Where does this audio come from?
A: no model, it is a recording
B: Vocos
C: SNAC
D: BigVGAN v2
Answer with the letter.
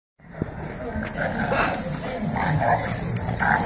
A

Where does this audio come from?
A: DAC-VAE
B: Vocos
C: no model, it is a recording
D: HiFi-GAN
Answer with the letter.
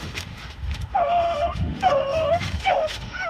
A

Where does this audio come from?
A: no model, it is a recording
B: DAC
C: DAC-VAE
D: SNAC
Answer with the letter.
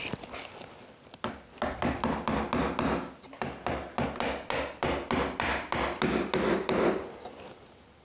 A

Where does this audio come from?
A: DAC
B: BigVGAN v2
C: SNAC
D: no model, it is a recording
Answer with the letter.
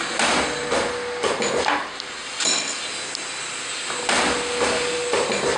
D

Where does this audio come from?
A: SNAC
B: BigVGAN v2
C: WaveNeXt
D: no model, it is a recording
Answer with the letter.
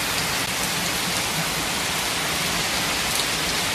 B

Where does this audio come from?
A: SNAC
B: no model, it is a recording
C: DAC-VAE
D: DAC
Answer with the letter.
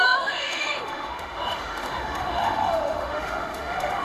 C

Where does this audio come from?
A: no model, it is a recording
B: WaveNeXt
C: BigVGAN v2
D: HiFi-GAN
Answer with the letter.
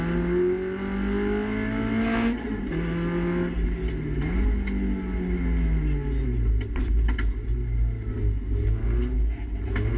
A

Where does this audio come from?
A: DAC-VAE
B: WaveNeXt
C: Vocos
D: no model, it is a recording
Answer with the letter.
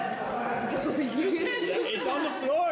D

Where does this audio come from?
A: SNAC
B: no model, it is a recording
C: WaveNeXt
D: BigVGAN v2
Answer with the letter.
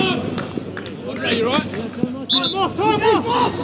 B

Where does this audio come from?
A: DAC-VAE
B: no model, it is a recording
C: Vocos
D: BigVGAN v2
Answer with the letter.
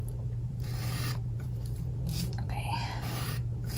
D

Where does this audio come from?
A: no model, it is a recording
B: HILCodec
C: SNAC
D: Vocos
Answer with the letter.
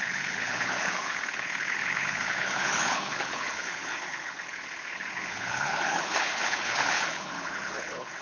B